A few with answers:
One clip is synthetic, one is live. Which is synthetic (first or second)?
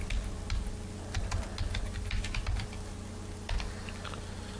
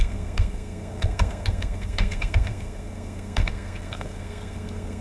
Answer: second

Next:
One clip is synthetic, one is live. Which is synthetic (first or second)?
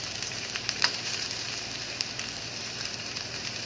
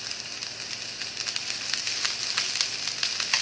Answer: first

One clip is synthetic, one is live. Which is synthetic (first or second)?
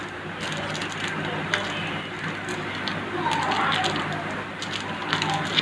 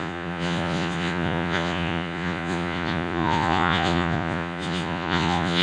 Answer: second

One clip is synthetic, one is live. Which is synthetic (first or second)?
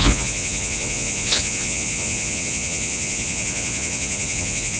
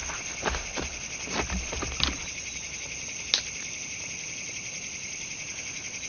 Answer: first